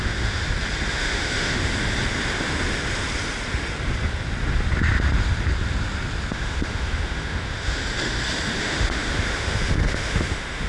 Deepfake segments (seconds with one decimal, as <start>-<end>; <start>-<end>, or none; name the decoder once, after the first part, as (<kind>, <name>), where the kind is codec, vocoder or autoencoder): 0.0-0.4 (autoencoder, DAC-VAE); 0.9-1.7; 6.3-7.8; 8.6-10.7